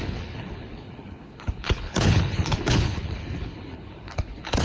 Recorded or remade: remade